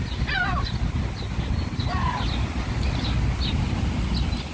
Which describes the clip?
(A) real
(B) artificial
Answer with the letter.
A